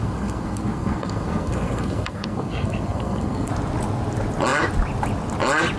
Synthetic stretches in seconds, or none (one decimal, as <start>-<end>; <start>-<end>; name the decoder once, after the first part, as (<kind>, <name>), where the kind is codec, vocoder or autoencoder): 0.0-3.5 (codec, SNAC)